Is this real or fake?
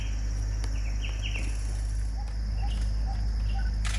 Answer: real